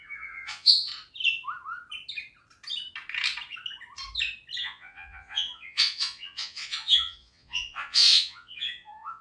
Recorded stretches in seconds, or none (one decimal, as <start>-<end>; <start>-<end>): 0.9-4.6